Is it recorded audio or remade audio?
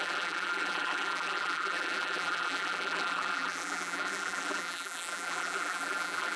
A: remade